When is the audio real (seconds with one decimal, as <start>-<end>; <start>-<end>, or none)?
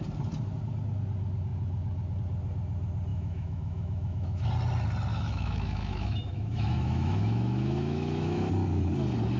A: 0.0-3.1; 4.5-5.1; 8.5-9.4